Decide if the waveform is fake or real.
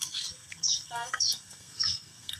fake